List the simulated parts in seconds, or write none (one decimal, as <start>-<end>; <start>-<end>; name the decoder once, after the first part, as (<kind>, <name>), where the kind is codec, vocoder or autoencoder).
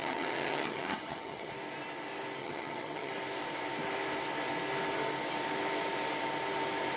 0.0-1.5 (vocoder, HiFi-GAN); 2.4-3.1